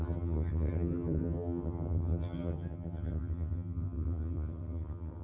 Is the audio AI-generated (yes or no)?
yes